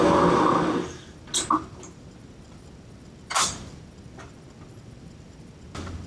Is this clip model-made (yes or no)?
no